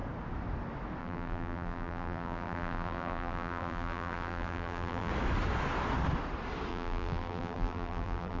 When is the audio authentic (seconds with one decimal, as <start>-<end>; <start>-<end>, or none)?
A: 0.0-1.0; 5.1-6.7